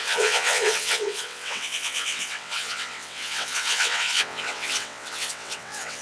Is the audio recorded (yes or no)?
no